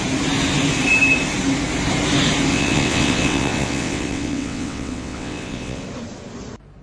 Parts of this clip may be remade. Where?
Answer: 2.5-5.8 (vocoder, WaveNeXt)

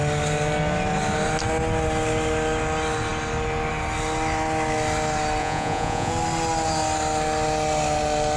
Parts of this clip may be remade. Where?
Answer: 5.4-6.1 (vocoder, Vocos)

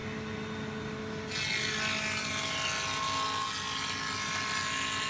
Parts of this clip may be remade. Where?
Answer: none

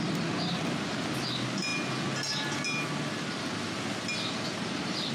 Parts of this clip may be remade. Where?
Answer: none